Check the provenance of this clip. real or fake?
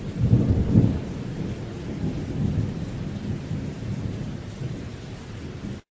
real